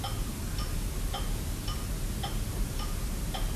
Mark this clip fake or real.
real